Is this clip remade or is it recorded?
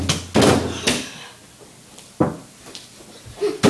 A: recorded